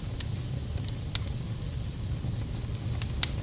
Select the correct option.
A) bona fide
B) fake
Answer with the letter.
A